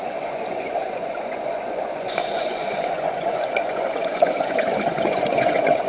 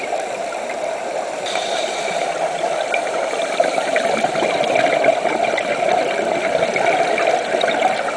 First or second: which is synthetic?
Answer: first